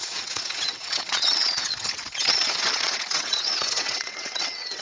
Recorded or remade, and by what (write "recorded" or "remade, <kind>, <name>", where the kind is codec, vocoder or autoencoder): remade, vocoder, WaveNeXt